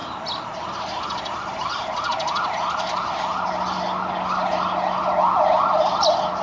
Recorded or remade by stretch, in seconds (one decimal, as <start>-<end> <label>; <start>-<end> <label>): 0.0-6.4 recorded